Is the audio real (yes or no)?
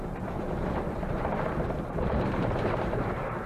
no